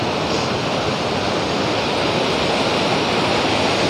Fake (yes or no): no